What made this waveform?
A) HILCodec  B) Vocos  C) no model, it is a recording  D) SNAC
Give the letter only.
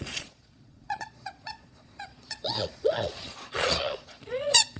B